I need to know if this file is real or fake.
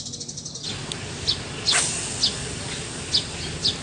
real